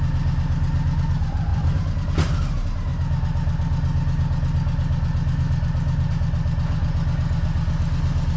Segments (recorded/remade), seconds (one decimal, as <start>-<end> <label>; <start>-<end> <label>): 0.0-8.4 recorded